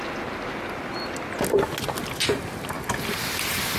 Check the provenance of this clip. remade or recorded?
recorded